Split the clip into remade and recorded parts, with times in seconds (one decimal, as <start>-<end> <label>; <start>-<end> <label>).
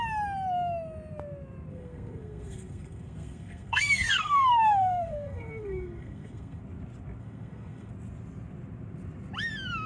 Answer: 0.0-1.7 recorded; 1.7-6.6 remade; 6.6-7.2 recorded; 7.2-7.9 remade; 7.9-9.9 recorded